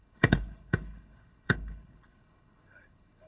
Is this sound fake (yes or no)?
yes